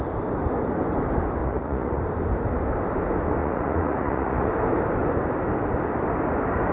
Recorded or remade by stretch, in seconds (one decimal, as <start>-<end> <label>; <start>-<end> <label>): 0.0-1.4 recorded; 1.4-2.0 remade; 2.0-3.4 recorded; 3.4-4.5 remade; 4.5-6.7 recorded